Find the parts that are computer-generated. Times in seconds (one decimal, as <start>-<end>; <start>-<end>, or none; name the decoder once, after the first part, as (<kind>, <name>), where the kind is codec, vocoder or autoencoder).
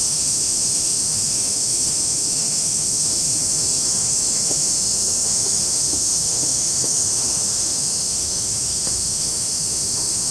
0.0-10.3 (autoencoder, DAC-VAE)